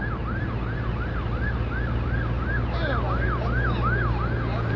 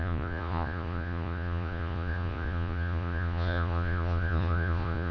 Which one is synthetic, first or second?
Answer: second